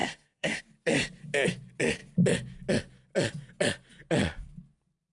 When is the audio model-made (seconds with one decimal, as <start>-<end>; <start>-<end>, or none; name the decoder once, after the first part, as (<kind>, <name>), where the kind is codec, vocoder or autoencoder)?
0.0-0.6 (codec, SNAC)